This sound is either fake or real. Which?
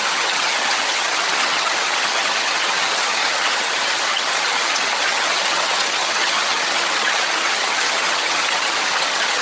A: fake